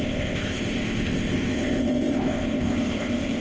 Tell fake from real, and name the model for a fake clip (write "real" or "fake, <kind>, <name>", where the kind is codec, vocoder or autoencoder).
fake, codec, ZipCodec